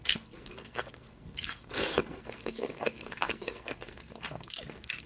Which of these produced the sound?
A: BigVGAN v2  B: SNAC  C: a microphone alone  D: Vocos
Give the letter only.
B